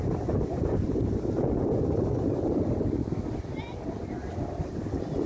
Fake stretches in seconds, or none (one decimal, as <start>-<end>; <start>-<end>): none